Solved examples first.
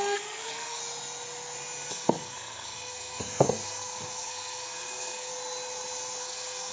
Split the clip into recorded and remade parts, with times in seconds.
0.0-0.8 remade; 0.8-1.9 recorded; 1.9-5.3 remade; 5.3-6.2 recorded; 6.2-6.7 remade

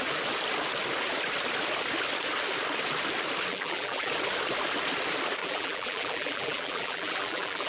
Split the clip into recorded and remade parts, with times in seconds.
0.0-3.5 recorded; 3.5-4.1 remade; 4.1-5.4 recorded; 5.4-7.7 remade